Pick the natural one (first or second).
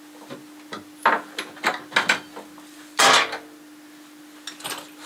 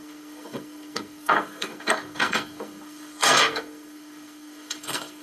first